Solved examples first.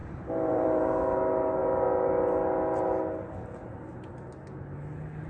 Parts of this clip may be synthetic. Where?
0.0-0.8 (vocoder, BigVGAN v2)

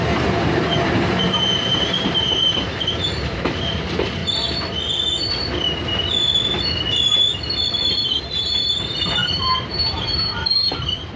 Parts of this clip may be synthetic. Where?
0.0-4.2 (vocoder, BigVGAN v2); 8.2-11.2

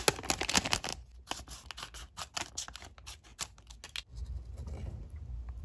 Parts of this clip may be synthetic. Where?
none

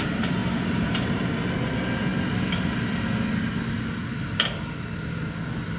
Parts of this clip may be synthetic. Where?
0.4-1.2 (vocoder, BigVGAN v2)